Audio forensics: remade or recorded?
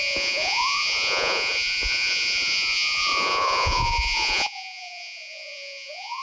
remade